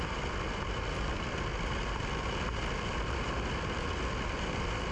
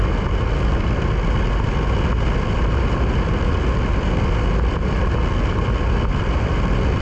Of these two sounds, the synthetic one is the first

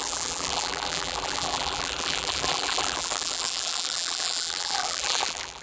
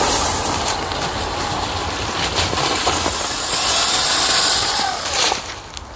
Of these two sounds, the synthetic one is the first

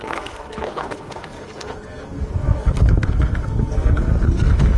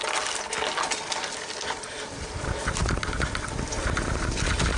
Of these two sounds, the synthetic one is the first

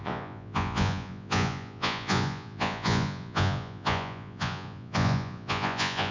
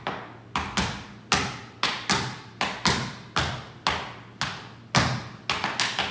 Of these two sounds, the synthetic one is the first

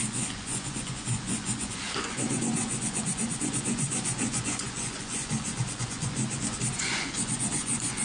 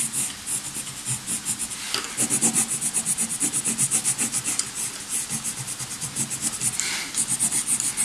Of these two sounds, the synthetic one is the first